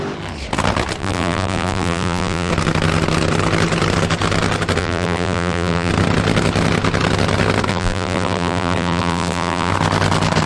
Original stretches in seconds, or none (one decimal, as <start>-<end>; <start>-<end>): 0.0-1.0; 2.5-4.8; 5.9-7.7; 9.7-10.5